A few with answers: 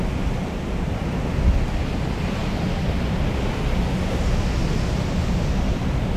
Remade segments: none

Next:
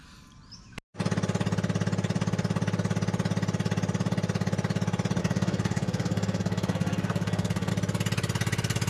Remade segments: 5.2-7.7 (codec, SNAC)

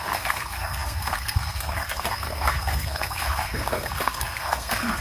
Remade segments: 0.0-5.0 (codec, SNAC)

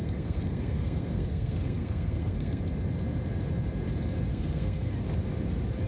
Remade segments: 0.0-2.6 (codec, SNAC); 4.3-4.9

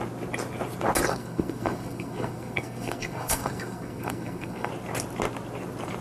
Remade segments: 1.1-4.7 (codec, SNAC)

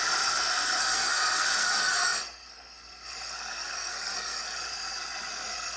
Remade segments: 0.0-5.8 (codec, SNAC)

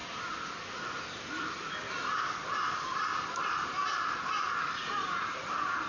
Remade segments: none